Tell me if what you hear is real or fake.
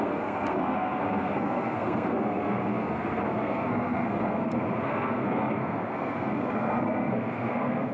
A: fake